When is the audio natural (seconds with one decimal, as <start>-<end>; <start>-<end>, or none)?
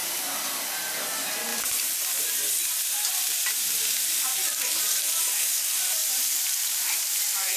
0.9-1.5; 5.0-6.0